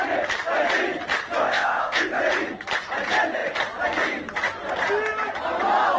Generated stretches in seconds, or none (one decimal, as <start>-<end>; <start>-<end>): 1.4-2.2